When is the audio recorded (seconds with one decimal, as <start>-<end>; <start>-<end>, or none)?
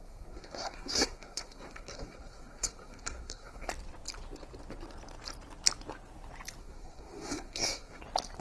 3.7-6.6; 8.0-8.4